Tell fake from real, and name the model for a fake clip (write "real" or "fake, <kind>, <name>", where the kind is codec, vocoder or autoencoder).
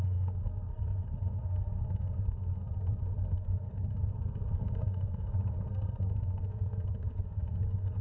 fake, codec, SNAC